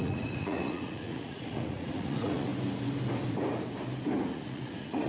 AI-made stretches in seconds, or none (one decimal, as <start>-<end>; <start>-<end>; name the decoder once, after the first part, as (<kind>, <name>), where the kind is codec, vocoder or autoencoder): 0.0-2.5 (vocoder, Vocos); 4.3-5.1